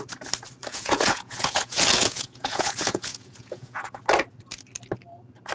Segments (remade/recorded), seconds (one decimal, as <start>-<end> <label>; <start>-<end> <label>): 0.0-0.7 recorded; 0.7-4.0 remade; 4.0-5.5 recorded